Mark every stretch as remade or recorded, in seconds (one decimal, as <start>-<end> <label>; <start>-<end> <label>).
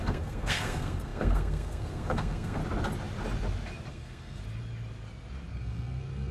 0.0-2.6 remade; 2.6-3.9 recorded; 3.9-4.4 remade; 4.4-5.5 recorded; 5.5-6.3 remade